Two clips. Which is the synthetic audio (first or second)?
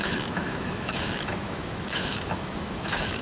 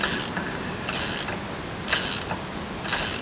first